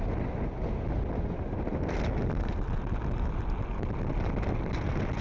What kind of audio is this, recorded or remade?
recorded